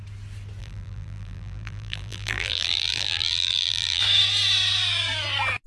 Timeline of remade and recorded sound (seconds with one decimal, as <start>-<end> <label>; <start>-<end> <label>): 0.0-0.6 recorded; 0.6-4.0 remade; 4.0-5.7 recorded